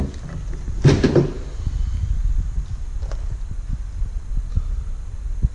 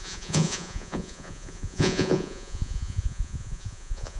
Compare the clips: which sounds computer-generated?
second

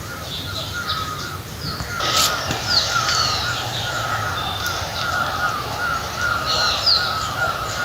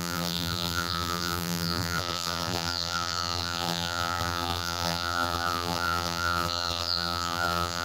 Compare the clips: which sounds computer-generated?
second